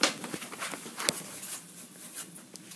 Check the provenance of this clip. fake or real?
real